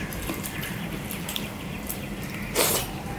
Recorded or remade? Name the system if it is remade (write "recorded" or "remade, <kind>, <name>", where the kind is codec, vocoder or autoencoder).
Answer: remade, vocoder, BigVGAN v2